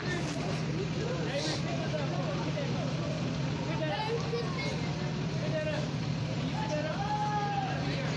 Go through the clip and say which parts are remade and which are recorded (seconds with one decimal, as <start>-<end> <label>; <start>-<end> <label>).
0.0-8.2 recorded